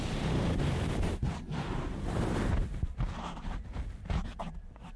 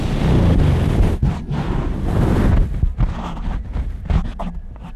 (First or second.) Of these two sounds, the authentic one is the second